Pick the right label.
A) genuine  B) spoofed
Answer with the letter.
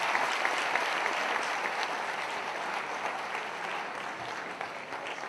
A